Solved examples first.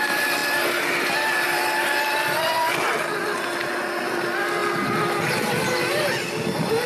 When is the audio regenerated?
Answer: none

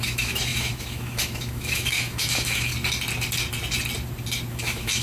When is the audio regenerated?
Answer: 0.0-2.7; 4.5-5.0

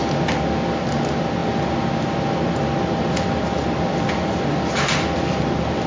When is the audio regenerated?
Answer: none

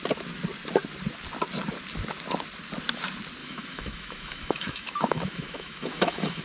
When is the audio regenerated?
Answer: 3.4-6.4

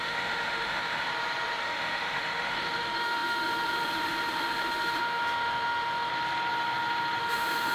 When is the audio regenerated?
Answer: 0.0-1.1; 1.6-6.1; 7.2-7.7

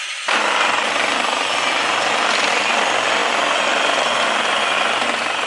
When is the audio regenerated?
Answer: none

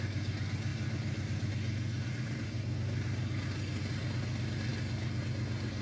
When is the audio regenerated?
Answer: none